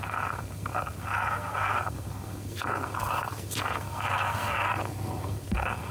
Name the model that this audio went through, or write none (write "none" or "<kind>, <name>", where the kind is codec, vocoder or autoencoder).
codec, SNAC